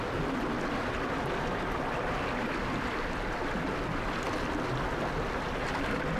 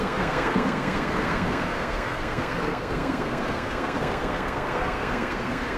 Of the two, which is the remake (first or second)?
second